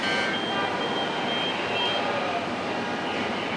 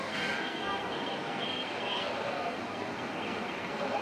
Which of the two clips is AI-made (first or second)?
second